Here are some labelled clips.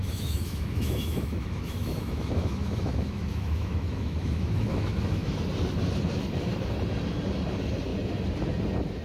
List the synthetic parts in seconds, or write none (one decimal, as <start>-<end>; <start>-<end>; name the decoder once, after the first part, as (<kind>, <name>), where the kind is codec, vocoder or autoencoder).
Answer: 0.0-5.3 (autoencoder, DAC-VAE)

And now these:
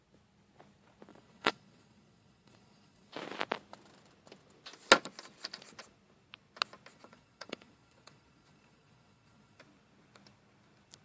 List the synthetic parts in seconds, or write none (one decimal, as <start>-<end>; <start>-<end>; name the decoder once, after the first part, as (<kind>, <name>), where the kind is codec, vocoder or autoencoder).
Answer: 1.1-3.1 (vocoder, Vocos); 6.9-9.6

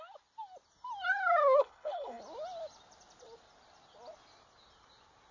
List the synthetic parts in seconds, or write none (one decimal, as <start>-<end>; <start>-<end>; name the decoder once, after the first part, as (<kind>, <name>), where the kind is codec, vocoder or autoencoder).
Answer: 1.6-2.2 (codec, HILCodec)

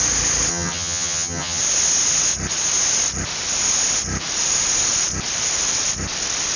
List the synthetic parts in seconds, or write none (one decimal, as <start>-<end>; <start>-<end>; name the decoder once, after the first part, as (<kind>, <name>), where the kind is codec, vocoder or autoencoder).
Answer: 0.5-1.6 (vocoder, HiFi-GAN)

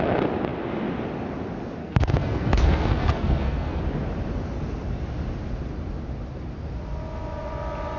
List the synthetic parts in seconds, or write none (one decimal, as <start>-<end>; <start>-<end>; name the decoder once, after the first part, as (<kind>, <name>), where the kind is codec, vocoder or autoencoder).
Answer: 1.8-3.8 (codec, SNAC)

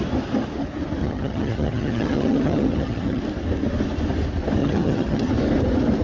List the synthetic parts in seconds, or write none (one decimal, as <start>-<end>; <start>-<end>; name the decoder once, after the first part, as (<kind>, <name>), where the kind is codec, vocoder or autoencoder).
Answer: 1.0-3.2 (vocoder, HiFi-GAN); 4.6-5.3

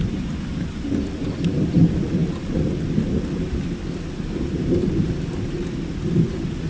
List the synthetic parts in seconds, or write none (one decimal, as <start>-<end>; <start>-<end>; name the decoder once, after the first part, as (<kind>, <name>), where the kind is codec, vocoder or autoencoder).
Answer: 0.0-6.7 (vocoder, BigVGAN v2)